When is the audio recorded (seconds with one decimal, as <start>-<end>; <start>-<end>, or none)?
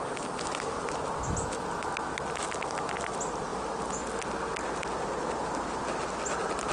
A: 0.0-6.7